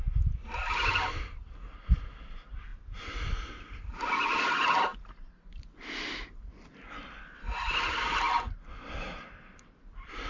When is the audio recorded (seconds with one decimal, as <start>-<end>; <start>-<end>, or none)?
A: 0.0-10.3